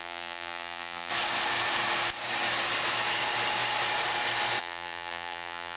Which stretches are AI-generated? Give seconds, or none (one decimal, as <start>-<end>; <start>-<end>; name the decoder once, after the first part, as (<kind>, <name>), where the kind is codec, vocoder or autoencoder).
0.0-1.1 (vocoder, BigVGAN v2); 4.6-5.8